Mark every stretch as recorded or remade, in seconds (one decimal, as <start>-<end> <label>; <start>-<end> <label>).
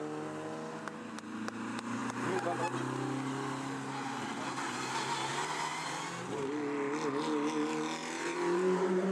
0.0-8.0 recorded; 8.0-9.1 remade